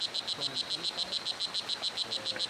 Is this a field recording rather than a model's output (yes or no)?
yes